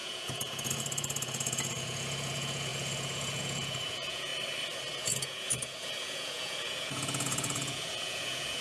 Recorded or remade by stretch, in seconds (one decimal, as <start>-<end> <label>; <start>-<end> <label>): 0.0-4.3 remade; 4.3-4.9 recorded; 4.9-8.6 remade